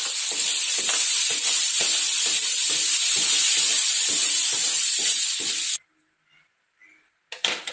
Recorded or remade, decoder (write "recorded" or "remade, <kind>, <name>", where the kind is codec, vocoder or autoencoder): recorded